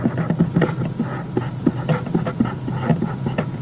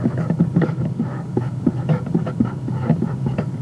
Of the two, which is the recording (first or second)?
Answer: first